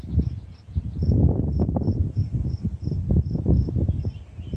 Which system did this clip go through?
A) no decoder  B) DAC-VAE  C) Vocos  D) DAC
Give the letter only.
A